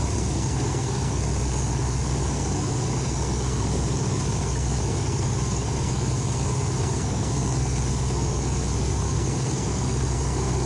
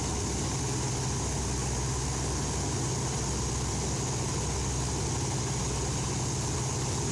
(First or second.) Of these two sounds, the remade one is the first